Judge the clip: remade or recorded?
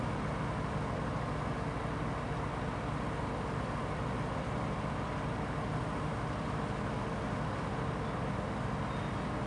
recorded